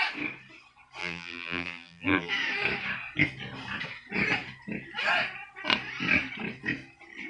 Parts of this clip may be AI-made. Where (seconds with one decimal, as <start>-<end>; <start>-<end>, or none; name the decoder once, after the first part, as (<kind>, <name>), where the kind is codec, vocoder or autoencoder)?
1.0-2.3 (vocoder, BigVGAN v2)